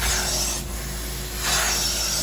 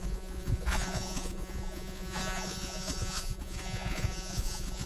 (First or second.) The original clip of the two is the first